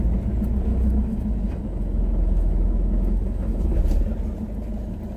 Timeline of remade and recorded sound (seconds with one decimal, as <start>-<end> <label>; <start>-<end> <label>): 0.0-0.7 recorded; 0.7-3.8 remade; 3.8-5.2 recorded